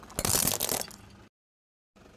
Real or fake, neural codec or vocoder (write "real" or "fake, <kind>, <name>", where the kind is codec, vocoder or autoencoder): real